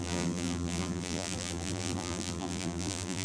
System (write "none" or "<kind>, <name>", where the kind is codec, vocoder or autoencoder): vocoder, BigVGAN v2